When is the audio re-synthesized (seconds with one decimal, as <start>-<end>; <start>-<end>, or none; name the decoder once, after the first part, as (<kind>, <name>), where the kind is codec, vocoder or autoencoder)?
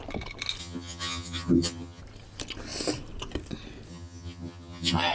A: 0.6-2.0 (vocoder, HiFi-GAN); 3.9-5.1